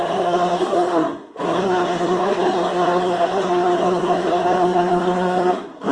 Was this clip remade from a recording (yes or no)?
yes